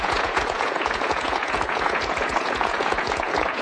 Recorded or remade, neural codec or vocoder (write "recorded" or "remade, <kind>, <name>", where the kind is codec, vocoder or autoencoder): remade, vocoder, Vocos